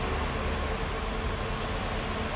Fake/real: real